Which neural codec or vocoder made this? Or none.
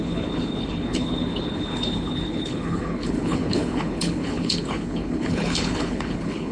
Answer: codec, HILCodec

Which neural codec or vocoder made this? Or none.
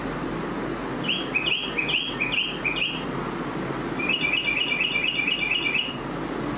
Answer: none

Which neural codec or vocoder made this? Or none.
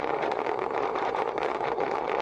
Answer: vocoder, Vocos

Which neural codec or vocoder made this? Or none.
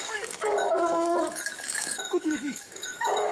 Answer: codec, DAC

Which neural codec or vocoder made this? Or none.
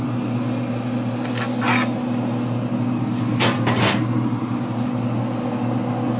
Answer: none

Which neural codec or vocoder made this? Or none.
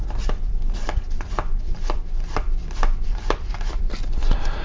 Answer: vocoder, BigVGAN v2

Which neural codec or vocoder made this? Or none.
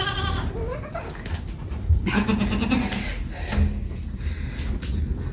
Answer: none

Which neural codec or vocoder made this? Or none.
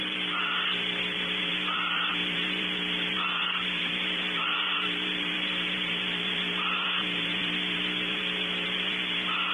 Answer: vocoder, BigVGAN v2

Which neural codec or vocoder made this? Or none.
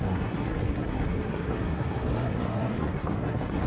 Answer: codec, SNAC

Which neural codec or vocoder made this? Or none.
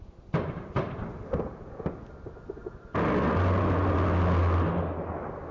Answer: none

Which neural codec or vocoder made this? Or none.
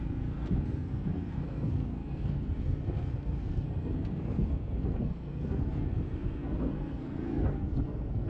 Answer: codec, SNAC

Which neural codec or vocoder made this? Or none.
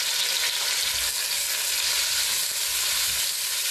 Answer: none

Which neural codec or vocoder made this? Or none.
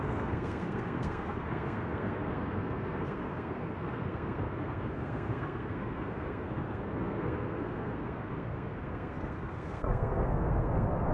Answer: codec, SNAC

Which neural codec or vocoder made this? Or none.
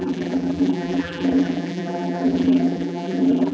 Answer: vocoder, BigVGAN v2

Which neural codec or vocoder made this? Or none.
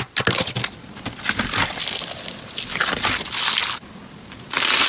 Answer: none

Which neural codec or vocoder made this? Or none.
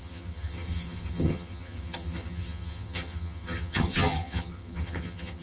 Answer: vocoder, HiFi-GAN